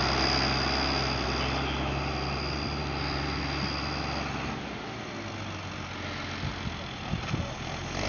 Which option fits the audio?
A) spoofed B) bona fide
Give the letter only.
B